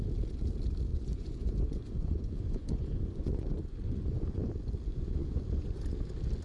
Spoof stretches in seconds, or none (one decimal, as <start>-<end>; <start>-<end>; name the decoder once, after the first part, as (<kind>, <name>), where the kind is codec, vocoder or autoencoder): 0.9-4.5 (vocoder, Vocos); 4.9-5.8